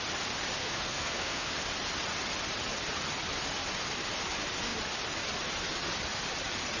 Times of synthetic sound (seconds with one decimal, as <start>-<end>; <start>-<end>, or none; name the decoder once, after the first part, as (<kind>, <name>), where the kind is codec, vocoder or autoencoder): 0.6-1.5 (codec, SNAC)